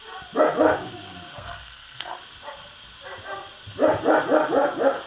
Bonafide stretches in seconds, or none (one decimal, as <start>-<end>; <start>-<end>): 0.0-1.3; 2.2-5.1